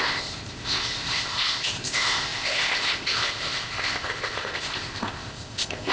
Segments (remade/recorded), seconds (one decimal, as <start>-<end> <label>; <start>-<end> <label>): 0.0-5.9 remade

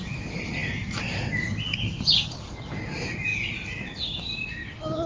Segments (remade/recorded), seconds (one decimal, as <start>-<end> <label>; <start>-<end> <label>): 0.0-5.1 recorded

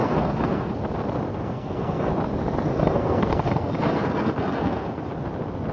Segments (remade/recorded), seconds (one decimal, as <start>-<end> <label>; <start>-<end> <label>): 0.0-0.7 remade; 0.7-1.3 recorded; 1.3-2.1 remade; 2.1-2.7 recorded; 2.7-5.1 remade; 5.1-5.7 recorded

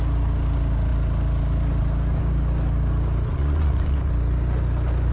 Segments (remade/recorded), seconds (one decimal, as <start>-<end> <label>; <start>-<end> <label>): 0.0-3.3 recorded; 3.3-4.1 remade; 4.1-5.1 recorded

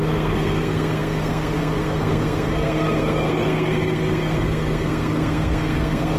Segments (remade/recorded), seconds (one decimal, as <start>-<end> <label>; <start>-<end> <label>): 0.0-6.2 remade

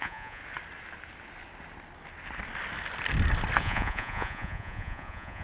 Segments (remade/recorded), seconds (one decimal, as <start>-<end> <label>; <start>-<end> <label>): 0.0-0.4 remade; 0.4-3.6 recorded; 3.6-5.4 remade